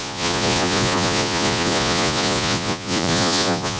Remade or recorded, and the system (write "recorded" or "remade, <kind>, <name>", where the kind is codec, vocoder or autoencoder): remade, vocoder, Vocos